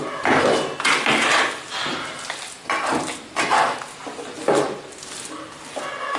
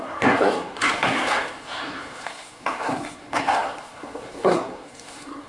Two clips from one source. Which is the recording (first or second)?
first